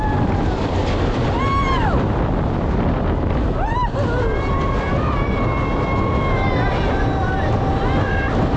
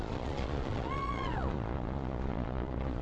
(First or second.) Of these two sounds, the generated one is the second